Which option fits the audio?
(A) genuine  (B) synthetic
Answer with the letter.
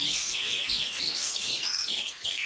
B